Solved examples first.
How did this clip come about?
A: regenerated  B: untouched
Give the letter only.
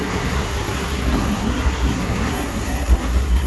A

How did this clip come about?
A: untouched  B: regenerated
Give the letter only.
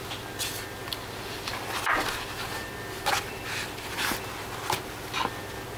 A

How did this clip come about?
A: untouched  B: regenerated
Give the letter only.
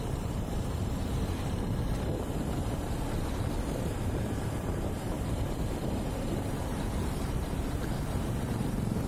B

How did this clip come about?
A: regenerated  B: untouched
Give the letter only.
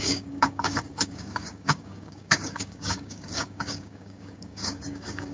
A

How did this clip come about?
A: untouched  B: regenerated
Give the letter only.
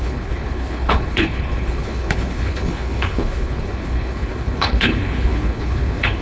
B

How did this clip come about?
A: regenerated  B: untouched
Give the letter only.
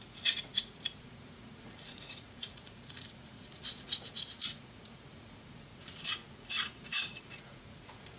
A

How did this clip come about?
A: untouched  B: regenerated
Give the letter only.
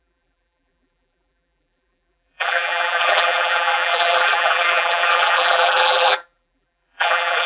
B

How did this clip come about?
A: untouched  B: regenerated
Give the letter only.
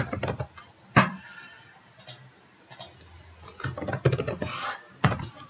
A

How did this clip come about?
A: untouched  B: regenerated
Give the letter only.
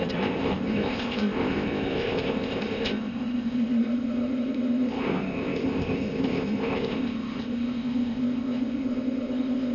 B